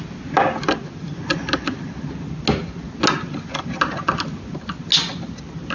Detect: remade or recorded recorded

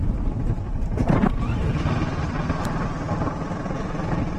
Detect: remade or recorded recorded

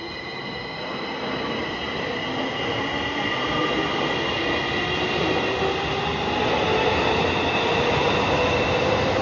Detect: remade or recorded recorded